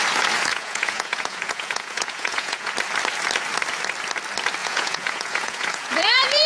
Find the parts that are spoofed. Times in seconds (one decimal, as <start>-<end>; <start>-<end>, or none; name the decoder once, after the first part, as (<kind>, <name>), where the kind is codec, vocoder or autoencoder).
0.5-2.7 (vocoder, Vocos); 4.6-6.5